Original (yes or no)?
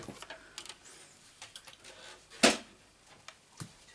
yes